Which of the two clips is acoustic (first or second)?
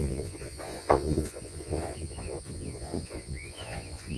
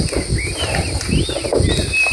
second